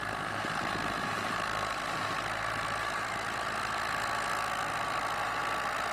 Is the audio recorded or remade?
recorded